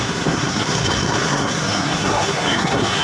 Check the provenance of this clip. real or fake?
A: fake